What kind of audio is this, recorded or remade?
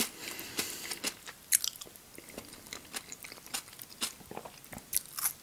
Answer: recorded